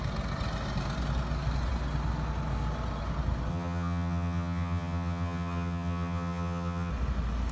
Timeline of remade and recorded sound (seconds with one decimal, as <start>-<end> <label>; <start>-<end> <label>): 0.0-3.5 recorded; 3.5-6.9 remade; 6.9-7.5 recorded